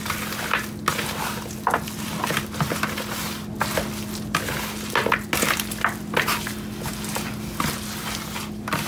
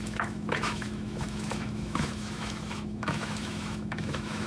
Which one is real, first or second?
first